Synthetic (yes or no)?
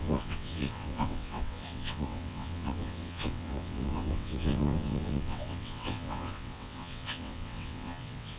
yes